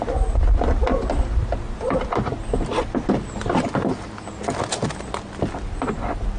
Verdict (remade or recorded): recorded